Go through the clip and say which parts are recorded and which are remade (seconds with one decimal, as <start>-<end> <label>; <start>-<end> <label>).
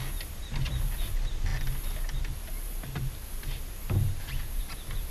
0.0-5.1 recorded